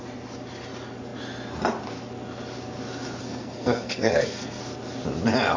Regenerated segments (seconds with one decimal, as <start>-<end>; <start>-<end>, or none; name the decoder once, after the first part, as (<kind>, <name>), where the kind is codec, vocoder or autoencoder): 3.2-4.6 (codec, SNAC)